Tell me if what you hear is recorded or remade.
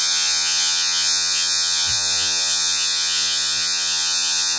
remade